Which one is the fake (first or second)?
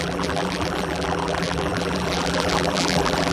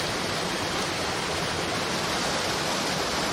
first